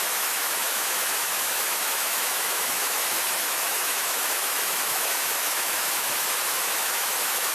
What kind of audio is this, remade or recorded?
remade